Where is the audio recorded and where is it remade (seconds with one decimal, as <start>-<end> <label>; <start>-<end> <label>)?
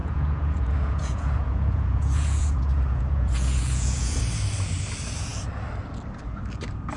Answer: 0.0-4.2 remade; 4.2-7.0 recorded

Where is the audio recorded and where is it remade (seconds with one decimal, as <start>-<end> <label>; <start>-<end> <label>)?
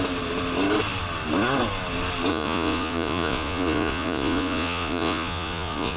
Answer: 0.0-2.3 recorded; 2.3-6.0 remade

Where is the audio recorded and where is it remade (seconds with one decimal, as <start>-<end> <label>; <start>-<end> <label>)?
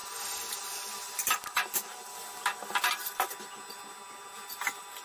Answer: 0.0-0.6 remade; 0.6-5.0 recorded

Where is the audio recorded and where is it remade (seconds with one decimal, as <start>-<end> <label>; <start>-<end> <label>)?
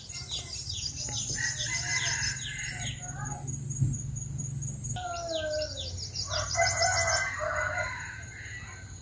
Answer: 0.0-9.0 recorded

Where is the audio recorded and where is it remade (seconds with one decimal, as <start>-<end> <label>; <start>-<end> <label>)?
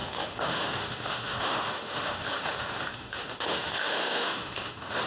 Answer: 0.0-5.1 remade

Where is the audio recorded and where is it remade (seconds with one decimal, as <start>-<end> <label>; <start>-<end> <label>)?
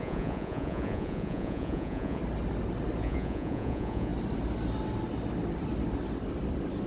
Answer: 0.0-2.2 remade; 2.2-3.0 recorded; 3.0-4.1 remade; 4.1-6.9 recorded